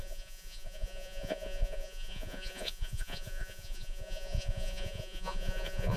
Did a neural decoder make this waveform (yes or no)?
yes